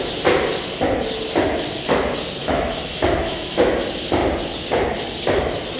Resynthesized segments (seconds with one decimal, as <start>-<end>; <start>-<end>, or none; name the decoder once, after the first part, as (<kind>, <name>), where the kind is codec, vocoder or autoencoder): 2.4-3.7 (autoencoder, DAC-VAE)